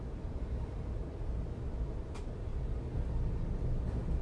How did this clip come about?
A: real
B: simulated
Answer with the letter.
A